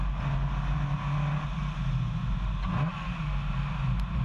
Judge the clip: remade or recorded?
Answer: recorded